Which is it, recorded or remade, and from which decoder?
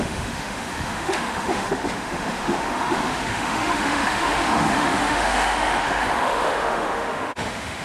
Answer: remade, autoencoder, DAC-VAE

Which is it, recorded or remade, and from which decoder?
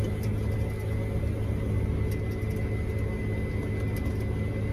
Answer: recorded